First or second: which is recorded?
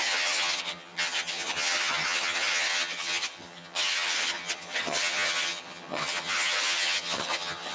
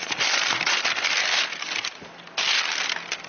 second